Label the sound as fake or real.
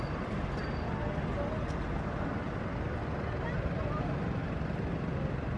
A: real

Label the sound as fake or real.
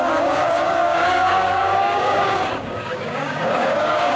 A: fake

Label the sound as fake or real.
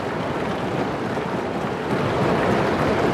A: real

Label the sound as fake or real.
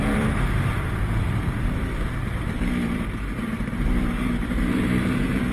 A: fake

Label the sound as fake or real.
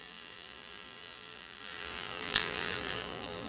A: fake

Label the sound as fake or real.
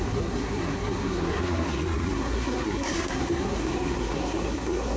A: fake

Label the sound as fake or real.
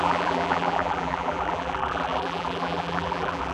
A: fake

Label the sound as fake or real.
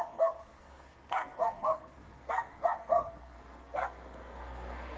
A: fake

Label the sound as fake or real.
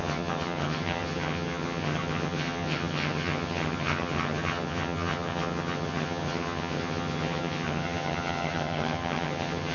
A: fake